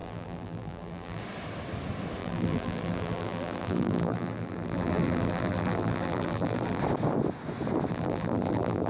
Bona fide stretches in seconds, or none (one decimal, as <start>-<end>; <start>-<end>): 1.2-2.2; 6.8-7.9